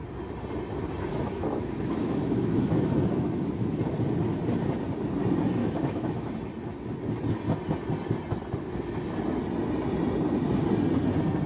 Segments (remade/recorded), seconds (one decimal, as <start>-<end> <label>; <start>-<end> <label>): 0.0-1.1 recorded; 1.1-3.8 remade; 3.8-5.6 recorded; 5.6-6.3 remade; 6.3-11.5 recorded